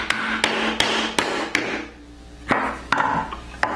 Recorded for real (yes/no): yes